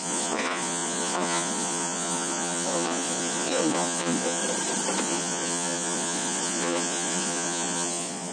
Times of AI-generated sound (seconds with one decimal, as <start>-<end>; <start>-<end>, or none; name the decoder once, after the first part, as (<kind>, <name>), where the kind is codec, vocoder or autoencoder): 0.0-4.4 (vocoder, Vocos); 5.0-8.3